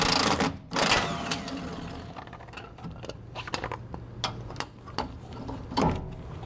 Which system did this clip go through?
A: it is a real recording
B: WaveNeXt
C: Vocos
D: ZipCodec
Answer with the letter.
A